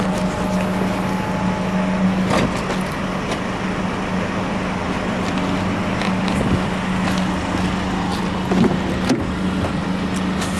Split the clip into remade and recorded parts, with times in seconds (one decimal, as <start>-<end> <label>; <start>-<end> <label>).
0.0-10.6 recorded